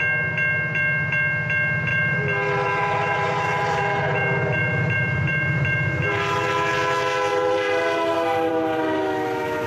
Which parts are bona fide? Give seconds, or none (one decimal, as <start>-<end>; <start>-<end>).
0.0-1.9; 6.5-7.3; 8.5-9.7